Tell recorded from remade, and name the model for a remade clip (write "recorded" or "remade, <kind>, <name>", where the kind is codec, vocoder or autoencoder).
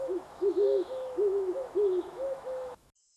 remade, autoencoder, DAC-VAE